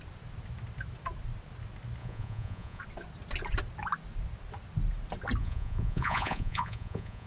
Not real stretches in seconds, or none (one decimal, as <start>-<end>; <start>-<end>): 2.0-2.8; 5.4-7.3